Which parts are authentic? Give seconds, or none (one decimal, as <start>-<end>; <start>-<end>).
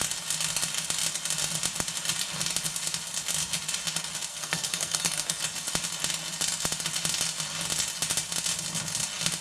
0.0-4.3; 5.4-9.4